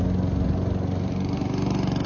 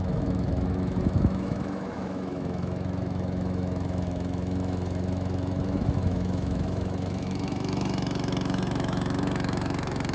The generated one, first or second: second